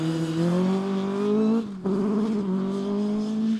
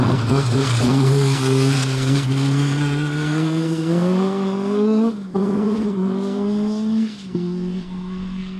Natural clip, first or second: first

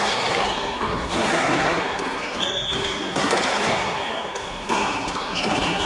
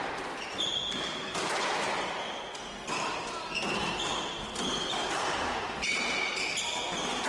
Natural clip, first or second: second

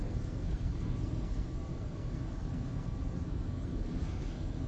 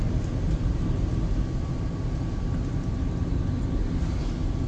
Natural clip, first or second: second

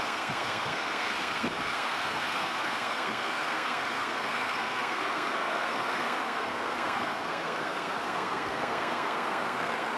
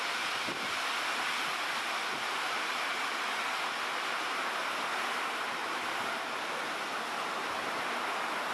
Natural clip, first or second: second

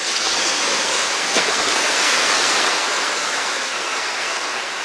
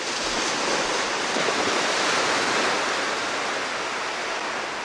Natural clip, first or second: second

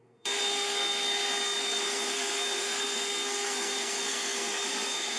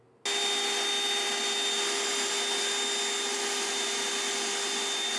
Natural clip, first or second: second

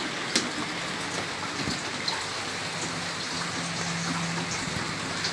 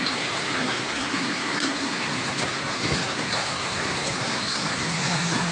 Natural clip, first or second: first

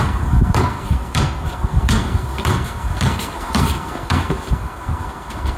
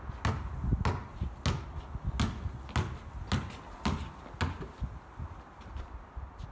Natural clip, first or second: second